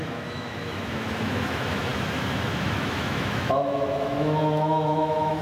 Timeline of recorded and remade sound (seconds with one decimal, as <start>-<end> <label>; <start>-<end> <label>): 0.0-5.4 remade